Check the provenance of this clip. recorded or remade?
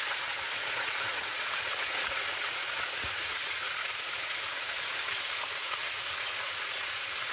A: remade